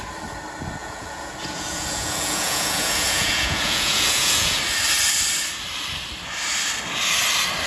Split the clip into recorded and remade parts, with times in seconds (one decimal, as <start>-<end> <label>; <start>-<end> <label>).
0.0-0.8 recorded; 0.8-4.6 remade; 4.6-7.7 recorded